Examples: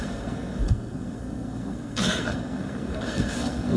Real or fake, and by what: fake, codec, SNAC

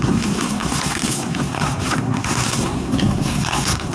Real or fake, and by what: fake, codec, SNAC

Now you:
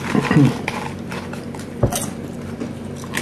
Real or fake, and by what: real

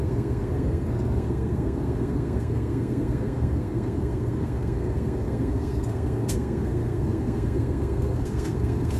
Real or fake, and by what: fake, codec, SNAC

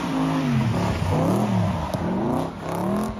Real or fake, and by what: real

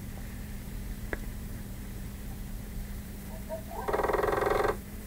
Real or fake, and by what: fake, vocoder, BigVGAN v2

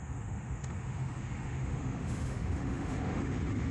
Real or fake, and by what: fake, autoencoder, DAC-VAE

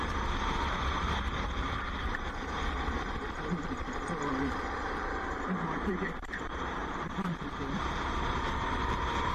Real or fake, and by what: fake, vocoder, BigVGAN v2